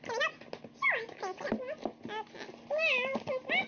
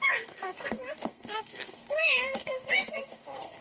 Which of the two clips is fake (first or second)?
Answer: second